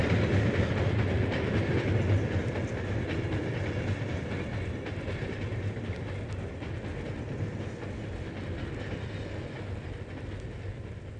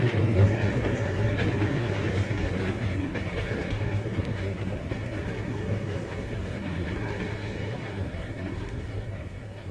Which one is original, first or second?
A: first